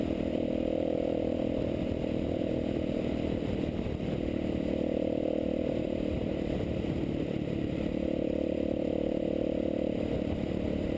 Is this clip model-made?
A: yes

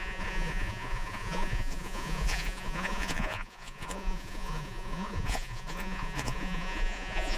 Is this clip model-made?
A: yes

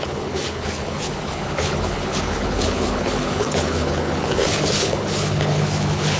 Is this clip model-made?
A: yes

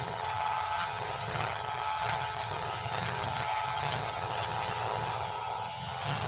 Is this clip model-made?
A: yes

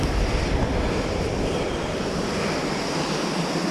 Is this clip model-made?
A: no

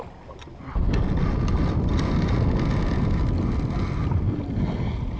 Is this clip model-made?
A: no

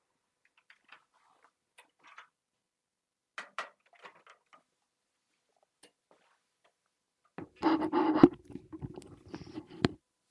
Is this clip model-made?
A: no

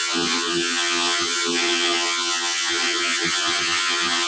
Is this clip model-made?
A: yes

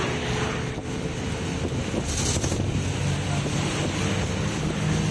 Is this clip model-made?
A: no